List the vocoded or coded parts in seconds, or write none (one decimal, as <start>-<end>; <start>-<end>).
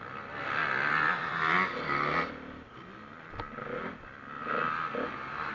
none